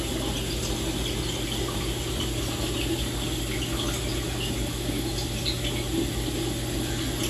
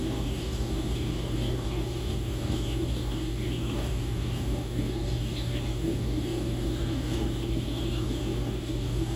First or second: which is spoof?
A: second